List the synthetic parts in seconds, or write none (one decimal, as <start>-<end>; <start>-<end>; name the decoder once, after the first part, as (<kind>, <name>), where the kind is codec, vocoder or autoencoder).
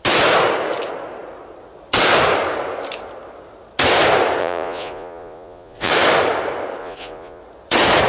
4.4-5.9 (vocoder, Vocos); 6.8-7.4